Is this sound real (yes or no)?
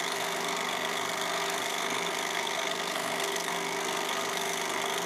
no